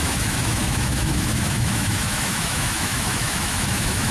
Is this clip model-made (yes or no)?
yes